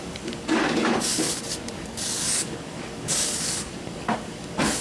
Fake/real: fake